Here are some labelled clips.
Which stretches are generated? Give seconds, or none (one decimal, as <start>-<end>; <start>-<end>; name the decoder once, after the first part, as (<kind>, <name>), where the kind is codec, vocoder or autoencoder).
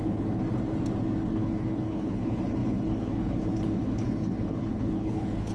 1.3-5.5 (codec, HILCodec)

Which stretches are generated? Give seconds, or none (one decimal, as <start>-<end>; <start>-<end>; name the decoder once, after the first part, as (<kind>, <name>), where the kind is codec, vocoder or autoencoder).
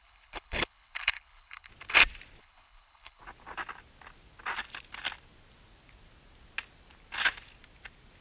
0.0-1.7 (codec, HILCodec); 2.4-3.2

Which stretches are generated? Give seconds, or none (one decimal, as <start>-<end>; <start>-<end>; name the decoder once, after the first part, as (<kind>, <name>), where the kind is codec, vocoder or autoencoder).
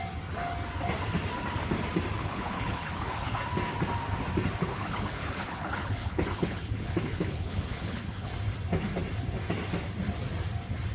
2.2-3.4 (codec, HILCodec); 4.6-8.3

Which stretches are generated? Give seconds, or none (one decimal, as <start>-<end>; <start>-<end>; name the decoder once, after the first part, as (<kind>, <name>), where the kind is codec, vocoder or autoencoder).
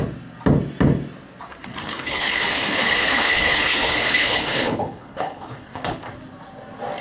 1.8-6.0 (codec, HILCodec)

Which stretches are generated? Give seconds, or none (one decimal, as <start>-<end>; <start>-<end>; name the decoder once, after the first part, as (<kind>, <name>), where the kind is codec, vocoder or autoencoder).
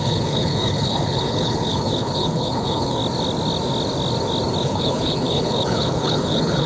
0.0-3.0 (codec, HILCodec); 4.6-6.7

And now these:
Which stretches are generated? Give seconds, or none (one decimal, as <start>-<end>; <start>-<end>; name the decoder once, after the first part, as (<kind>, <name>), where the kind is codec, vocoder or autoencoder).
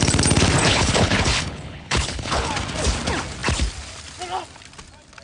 0.7-2.5 (codec, HILCodec)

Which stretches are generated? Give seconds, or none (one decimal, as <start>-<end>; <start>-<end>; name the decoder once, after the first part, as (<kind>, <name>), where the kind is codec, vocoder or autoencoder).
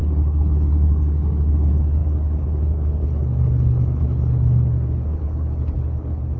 0.0-6.4 (codec, HILCodec)